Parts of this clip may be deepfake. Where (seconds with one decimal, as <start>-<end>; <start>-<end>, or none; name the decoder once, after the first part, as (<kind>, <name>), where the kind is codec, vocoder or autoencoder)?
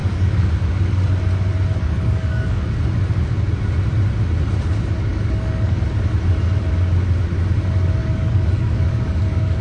0.0-0.5 (codec, DAC); 1.8-2.6; 5.1-5.8; 8.0-9.6